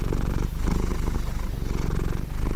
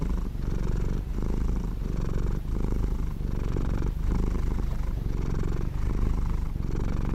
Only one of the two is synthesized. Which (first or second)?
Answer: second